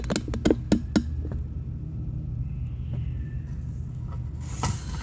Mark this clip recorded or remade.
recorded